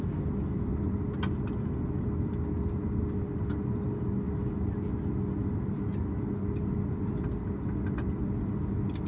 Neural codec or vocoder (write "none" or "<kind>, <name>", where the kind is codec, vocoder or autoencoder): none